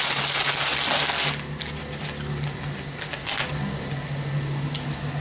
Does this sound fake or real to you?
real